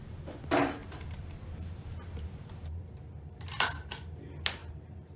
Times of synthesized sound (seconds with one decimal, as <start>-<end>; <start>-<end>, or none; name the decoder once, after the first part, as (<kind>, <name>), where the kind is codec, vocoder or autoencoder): 0.8-3.9 (vocoder, BigVGAN v2); 4.6-5.2